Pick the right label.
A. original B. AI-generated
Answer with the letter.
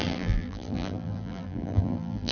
B